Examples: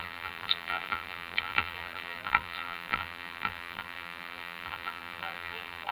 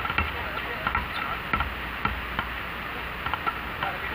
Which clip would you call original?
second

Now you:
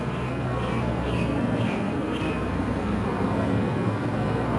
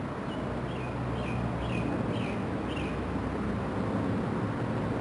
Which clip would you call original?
second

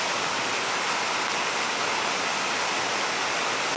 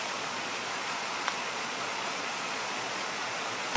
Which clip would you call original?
first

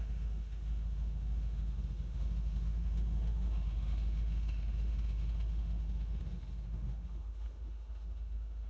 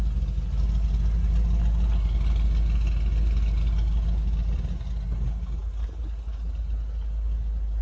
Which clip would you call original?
second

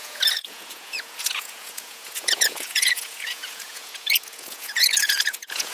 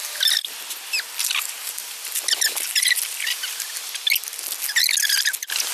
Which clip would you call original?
second